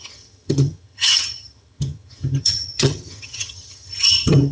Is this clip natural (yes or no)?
no